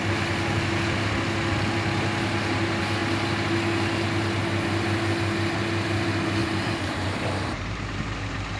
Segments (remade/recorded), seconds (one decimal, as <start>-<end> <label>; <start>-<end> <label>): 0.0-6.4 recorded; 6.4-8.6 remade